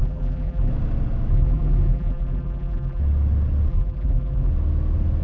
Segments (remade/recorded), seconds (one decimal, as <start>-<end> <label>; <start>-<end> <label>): 0.0-0.7 remade; 0.7-1.3 recorded; 1.3-3.0 remade; 3.0-3.7 recorded; 3.7-4.5 remade; 4.5-5.2 recorded